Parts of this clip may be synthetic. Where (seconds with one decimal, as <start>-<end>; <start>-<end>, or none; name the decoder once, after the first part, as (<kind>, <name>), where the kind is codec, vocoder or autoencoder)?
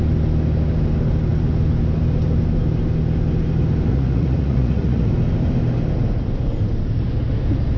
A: 3.9-5.1 (vocoder, Vocos)